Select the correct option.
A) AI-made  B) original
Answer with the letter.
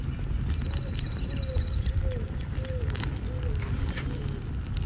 B